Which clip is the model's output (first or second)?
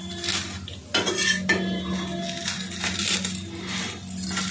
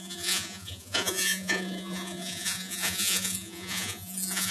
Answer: second